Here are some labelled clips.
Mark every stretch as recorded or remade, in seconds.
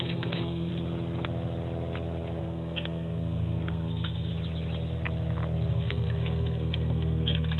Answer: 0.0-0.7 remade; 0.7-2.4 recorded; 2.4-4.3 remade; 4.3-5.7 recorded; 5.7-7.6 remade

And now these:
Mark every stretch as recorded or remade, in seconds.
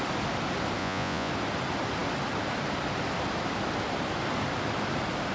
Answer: 0.0-0.8 recorded; 0.8-1.3 remade; 1.3-5.3 recorded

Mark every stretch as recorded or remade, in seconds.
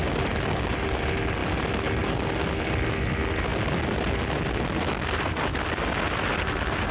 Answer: 0.0-6.9 recorded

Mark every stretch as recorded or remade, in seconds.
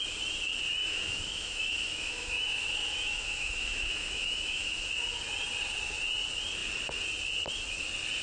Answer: 0.0-0.8 recorded; 0.8-4.9 remade; 4.9-8.2 recorded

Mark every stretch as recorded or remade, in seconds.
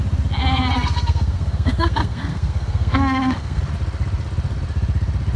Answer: 0.0-0.4 recorded; 0.4-3.6 remade; 3.6-5.4 recorded